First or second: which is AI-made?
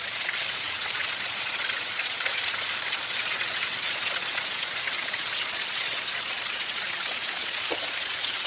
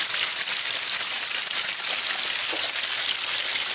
first